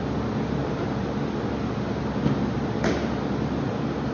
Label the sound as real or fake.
real